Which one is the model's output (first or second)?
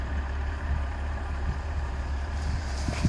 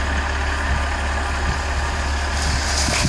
first